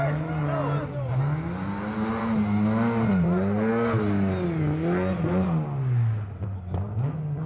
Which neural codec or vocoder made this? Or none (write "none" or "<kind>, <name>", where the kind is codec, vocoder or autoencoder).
none